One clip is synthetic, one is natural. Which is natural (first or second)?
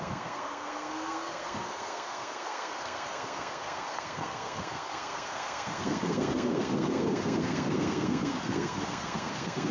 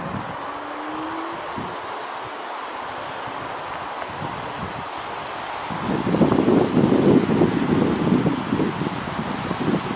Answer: second